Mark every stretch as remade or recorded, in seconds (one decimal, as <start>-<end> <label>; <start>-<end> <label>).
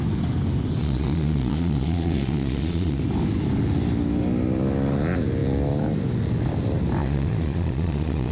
0.0-0.8 recorded; 0.8-3.0 remade; 3.0-7.0 recorded; 7.0-8.3 remade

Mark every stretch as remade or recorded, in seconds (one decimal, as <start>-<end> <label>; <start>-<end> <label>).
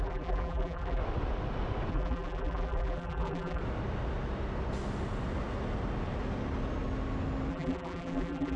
0.0-1.0 remade; 1.0-1.9 recorded; 1.9-3.6 remade; 3.6-7.5 recorded; 7.5-8.6 remade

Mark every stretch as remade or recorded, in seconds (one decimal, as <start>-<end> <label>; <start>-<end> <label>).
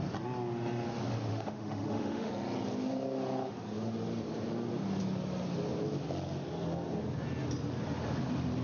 0.0-1.3 recorded; 1.3-2.3 remade; 2.3-8.6 recorded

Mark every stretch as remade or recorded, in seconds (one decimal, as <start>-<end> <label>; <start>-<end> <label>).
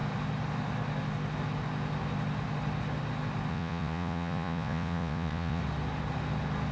0.0-3.5 recorded; 3.5-5.6 remade; 5.6-6.7 recorded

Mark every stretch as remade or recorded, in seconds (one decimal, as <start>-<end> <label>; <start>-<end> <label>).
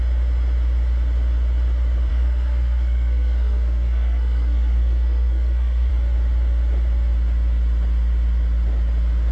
0.0-2.1 recorded; 2.1-5.9 remade; 5.9-9.3 recorded